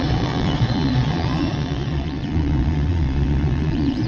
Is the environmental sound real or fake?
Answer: fake